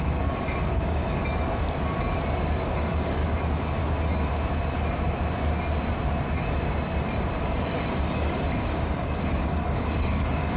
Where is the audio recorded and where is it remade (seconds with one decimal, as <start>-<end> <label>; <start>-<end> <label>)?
0.0-1.2 remade; 1.2-2.4 recorded; 2.4-3.2 remade; 3.2-7.4 recorded; 7.4-10.6 remade